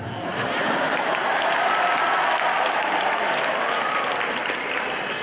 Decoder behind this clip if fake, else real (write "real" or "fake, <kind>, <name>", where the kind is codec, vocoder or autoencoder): real